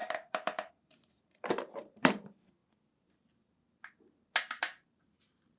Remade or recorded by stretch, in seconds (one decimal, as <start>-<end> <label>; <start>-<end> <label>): 0.0-2.6 remade; 2.6-4.6 recorded; 4.6-5.6 remade